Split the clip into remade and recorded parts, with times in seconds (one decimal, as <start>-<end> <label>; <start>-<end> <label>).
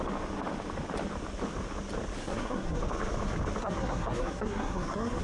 0.0-2.2 recorded; 2.2-2.8 remade; 2.8-3.6 recorded; 3.6-5.2 remade